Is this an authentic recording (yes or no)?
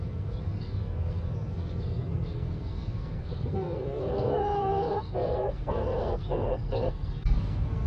no